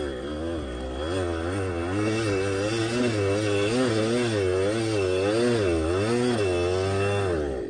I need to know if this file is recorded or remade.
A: recorded